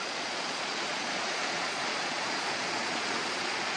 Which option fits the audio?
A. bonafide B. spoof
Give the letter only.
B